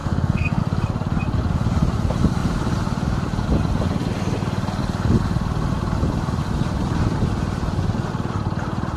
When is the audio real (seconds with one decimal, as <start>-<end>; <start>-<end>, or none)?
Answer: 0.6-9.0